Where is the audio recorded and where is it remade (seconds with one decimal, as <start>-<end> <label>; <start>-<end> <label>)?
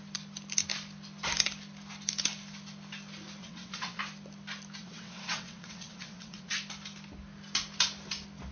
0.0-3.4 recorded; 3.4-4.0 remade; 4.0-4.8 recorded; 4.8-6.5 remade; 6.5-8.5 recorded